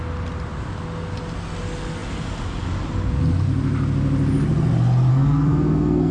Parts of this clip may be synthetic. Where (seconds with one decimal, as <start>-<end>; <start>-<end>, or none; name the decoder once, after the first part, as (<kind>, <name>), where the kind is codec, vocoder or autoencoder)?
5.1-6.1 (codec, SNAC)